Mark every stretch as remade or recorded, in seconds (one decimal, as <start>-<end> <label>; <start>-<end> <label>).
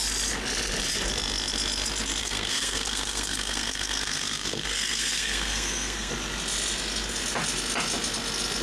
0.0-2.2 recorded; 2.2-6.1 remade; 6.1-8.6 recorded